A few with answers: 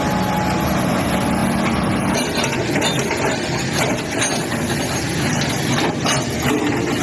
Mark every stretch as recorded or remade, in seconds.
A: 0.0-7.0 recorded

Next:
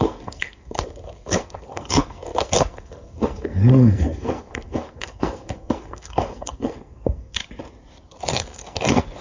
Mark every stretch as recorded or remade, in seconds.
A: 0.0-7.4 remade; 7.4-8.2 recorded; 8.2-9.2 remade

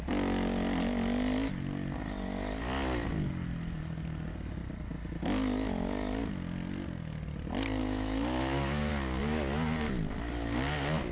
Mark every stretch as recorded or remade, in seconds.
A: 0.0-7.8 recorded; 7.8-8.9 remade; 8.9-11.1 recorded

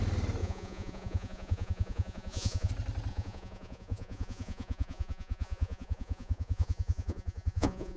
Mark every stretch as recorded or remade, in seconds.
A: 0.0-0.4 recorded; 0.4-2.7 remade; 2.7-3.1 recorded; 3.1-8.0 remade

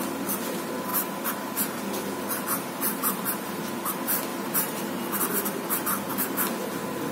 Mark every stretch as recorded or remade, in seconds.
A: 0.0-2.9 recorded; 2.9-3.6 remade; 3.6-4.3 recorded; 4.3-5.2 remade; 5.2-7.1 recorded